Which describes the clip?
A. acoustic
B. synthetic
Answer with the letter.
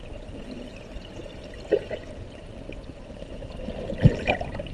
A